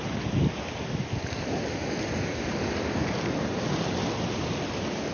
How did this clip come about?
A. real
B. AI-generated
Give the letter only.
A